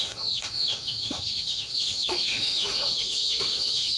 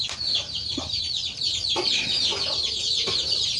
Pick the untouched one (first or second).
second